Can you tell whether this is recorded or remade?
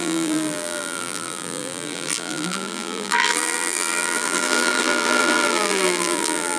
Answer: remade